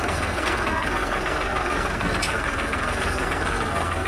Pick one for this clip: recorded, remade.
remade